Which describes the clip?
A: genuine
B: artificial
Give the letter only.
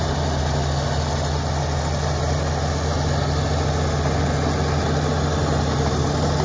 A